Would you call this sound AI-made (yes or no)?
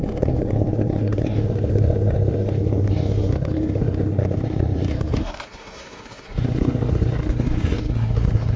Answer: yes